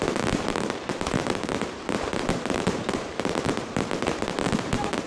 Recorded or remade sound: remade